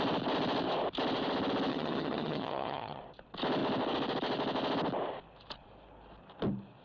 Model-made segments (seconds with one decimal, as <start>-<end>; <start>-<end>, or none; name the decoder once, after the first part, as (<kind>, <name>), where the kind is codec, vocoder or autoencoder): 1.7-3.0 (vocoder, HiFi-GAN)